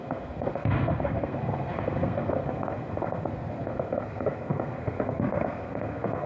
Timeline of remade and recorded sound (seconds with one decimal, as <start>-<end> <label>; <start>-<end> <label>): 0.0-6.3 remade